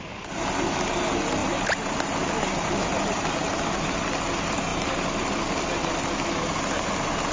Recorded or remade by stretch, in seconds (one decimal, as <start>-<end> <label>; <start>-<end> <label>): 0.0-7.3 recorded